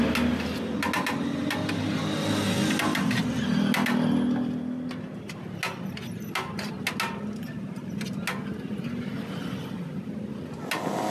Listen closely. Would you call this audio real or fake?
real